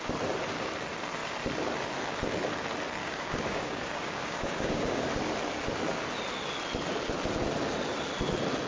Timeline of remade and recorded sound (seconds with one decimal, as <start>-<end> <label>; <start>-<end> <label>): 0.0-3.0 recorded; 3.0-5.1 remade; 5.1-8.7 recorded